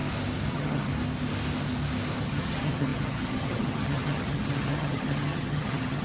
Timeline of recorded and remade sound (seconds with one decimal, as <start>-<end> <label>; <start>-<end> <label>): 0.0-0.5 recorded; 0.5-0.9 remade; 0.9-2.2 recorded; 2.2-6.0 remade